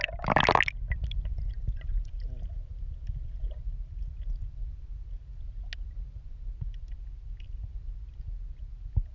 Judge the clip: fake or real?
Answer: real